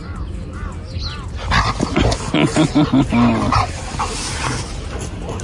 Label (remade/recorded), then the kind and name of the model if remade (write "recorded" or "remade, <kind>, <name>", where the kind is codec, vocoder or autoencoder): recorded